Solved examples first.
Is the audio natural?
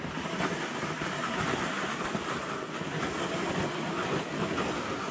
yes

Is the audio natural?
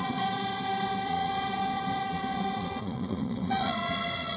no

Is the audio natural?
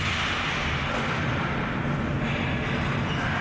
yes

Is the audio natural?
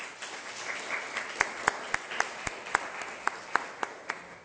yes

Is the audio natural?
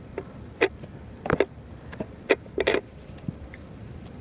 yes